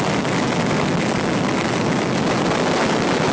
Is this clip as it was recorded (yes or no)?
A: yes